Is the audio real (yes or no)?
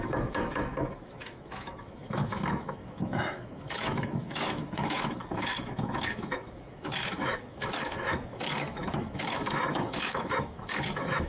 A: no